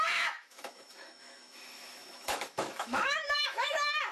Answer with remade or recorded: remade